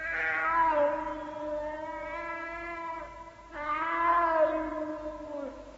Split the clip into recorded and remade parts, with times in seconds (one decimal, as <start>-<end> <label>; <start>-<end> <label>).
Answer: 0.0-5.8 recorded